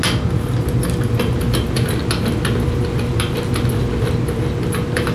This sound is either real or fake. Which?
real